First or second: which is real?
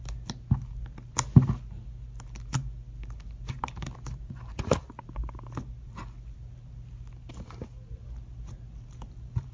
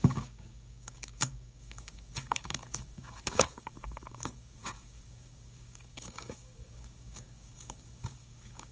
first